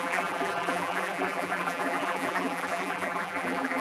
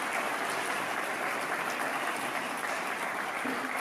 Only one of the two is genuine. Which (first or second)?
second